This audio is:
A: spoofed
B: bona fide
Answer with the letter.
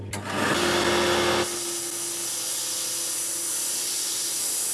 B